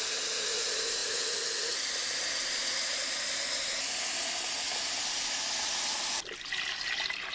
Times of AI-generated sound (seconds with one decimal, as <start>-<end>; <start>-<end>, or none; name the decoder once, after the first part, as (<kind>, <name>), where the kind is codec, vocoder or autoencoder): none